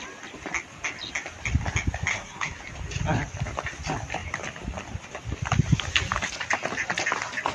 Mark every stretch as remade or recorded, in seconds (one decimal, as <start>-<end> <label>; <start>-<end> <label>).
0.0-2.1 recorded; 2.1-2.6 remade; 2.6-7.5 recorded